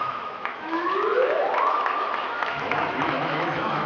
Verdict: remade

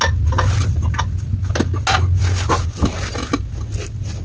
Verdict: recorded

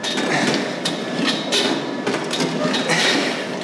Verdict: recorded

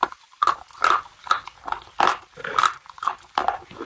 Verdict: remade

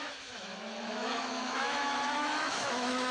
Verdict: remade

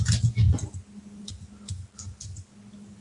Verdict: recorded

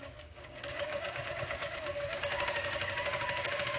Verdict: remade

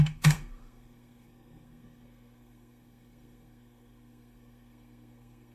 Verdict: remade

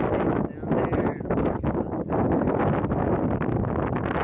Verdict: recorded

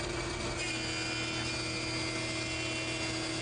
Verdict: recorded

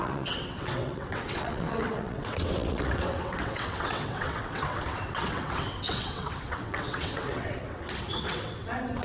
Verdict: remade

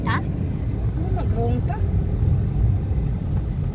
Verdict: recorded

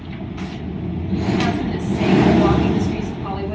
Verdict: recorded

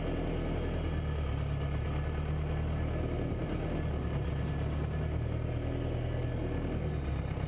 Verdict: recorded